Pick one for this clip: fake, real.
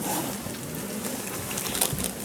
real